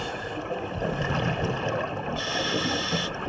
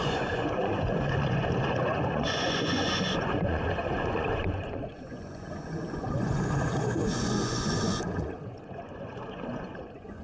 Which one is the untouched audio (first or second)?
first